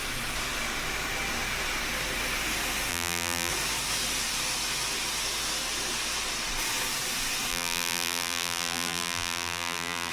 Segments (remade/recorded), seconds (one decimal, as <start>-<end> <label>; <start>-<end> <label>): 0.0-2.9 recorded; 2.9-3.5 remade; 3.5-7.5 recorded; 7.5-10.1 remade